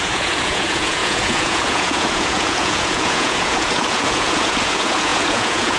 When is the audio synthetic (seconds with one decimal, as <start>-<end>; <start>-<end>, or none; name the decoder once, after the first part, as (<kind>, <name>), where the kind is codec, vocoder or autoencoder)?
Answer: 0.0-5.8 (vocoder, Vocos)